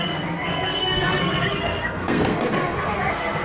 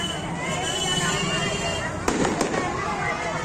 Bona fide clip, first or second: second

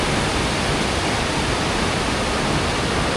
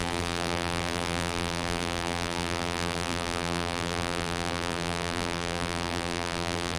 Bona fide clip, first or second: first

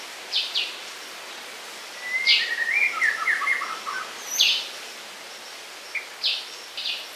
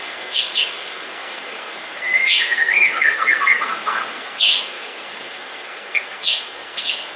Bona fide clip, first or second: first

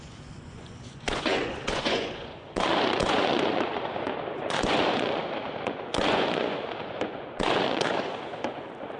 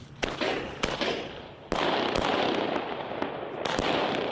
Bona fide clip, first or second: second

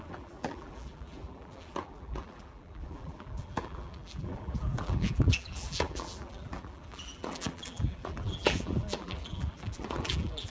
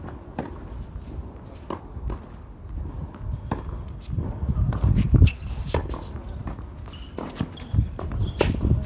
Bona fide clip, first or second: second